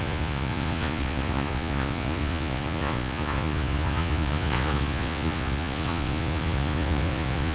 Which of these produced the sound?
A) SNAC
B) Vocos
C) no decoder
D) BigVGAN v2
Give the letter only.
B